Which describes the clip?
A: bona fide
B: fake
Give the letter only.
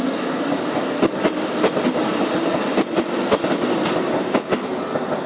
A